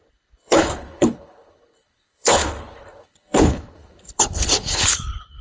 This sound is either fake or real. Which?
fake